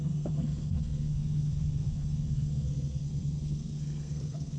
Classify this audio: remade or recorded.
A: remade